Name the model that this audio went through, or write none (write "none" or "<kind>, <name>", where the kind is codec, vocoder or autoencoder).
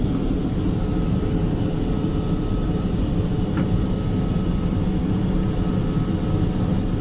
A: none